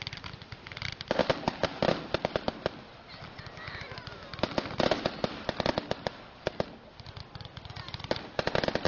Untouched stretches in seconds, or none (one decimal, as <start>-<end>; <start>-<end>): 0.0-8.9